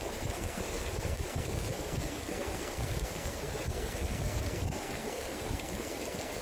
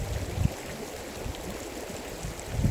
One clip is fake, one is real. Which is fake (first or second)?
first